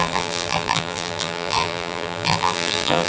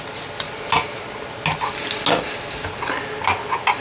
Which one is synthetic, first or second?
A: first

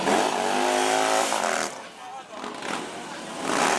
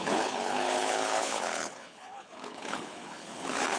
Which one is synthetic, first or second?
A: second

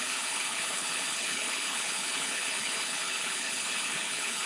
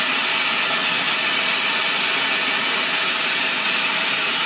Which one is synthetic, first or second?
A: first